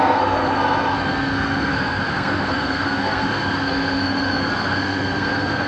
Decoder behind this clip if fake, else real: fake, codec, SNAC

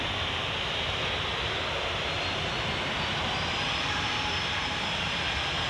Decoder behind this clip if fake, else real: real